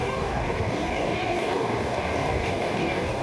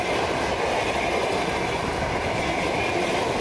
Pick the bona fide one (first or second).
second